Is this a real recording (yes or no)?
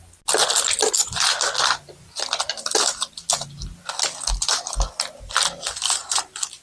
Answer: yes